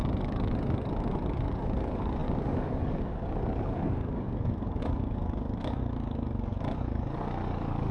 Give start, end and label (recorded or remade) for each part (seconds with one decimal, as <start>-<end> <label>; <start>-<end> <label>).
0.0-7.9 remade